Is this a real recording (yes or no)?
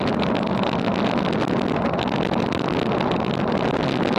yes